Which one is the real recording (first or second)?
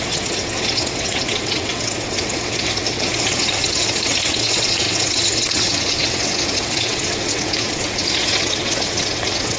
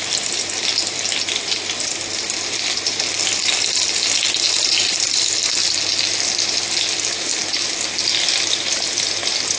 second